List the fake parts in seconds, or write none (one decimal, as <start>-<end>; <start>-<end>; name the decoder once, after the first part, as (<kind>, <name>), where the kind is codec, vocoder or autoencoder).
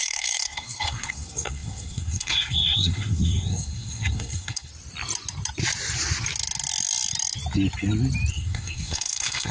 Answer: 0.0-4.7 (codec, SNAC); 8.3-9.5